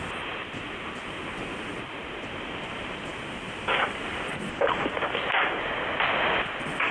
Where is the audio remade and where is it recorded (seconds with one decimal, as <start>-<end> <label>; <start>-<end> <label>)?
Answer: 0.0-1.7 recorded; 1.7-2.3 remade; 2.3-6.9 recorded